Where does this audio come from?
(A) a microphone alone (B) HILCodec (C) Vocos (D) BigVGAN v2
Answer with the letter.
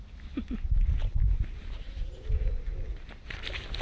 A